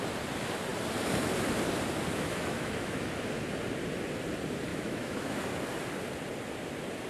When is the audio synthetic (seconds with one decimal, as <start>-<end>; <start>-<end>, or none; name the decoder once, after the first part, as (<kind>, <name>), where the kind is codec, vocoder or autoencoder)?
2.1-3.1 (autoencoder, DAC-VAE); 4.7-5.4